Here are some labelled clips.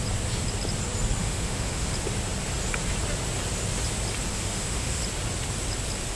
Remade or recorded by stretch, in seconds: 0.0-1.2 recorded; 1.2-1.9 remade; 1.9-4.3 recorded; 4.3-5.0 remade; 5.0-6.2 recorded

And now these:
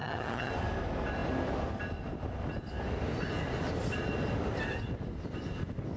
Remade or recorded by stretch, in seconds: 0.0-0.5 remade; 0.5-6.0 recorded

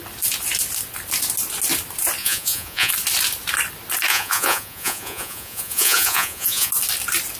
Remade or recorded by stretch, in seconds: 0.0-2.2 recorded; 2.2-2.9 remade; 2.9-4.1 recorded; 4.1-6.7 remade; 6.7-7.4 recorded